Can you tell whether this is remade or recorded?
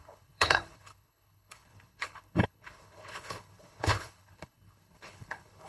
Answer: remade